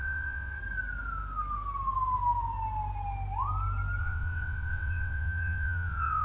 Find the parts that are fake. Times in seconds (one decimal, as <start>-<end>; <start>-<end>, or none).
0.0-0.6; 4.0-6.2